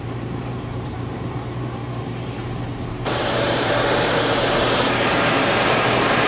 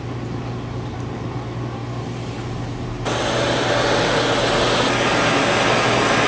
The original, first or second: second